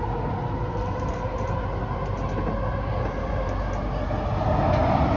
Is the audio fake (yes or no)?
no